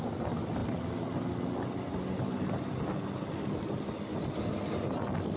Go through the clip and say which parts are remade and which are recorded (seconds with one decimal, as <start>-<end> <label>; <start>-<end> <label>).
0.0-5.4 recorded